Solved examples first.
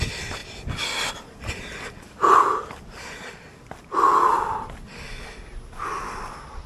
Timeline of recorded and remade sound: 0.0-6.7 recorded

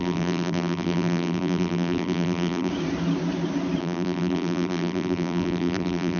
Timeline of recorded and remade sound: 0.0-2.7 remade; 2.7-3.8 recorded; 3.8-6.2 remade